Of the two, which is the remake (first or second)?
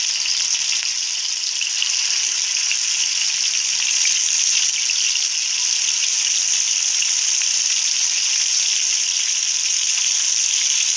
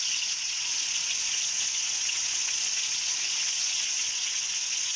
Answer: second